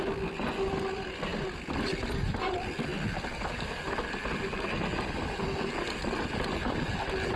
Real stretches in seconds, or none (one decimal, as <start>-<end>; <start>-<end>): 0.0-7.4